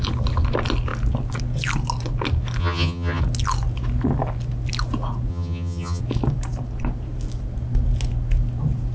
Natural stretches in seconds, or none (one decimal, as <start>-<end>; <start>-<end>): 0.0-2.6; 3.2-5.3; 6.0-8.9